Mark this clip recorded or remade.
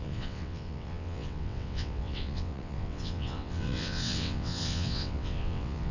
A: remade